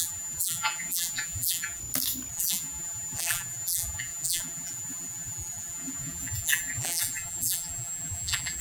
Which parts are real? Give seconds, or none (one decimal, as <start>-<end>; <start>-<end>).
1.8-2.3